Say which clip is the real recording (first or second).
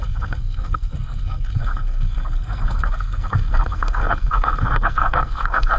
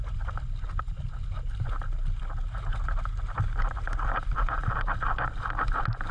second